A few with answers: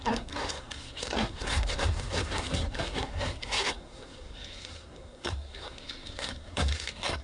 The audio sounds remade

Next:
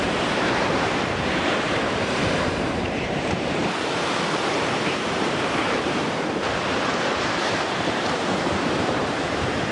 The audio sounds remade